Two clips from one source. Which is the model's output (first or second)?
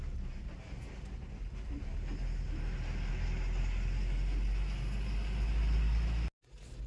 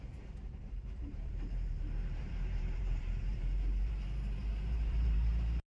second